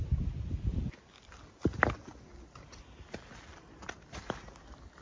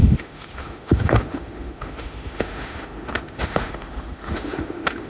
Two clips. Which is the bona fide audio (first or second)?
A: first